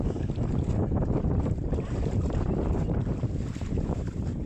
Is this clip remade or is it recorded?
remade